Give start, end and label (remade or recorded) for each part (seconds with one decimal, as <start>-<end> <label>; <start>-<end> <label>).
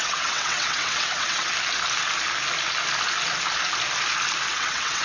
0.0-1.5 remade; 1.5-4.5 recorded; 4.5-5.0 remade